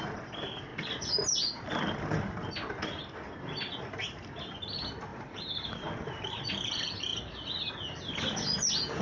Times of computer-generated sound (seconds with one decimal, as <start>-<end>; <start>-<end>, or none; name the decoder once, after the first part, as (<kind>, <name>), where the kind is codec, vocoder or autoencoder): 5.1-6.4 (vocoder, BigVGAN v2); 7.1-7.7